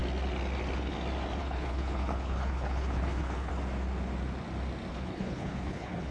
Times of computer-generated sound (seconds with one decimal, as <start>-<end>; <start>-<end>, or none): 1.4-3.5; 4.9-6.1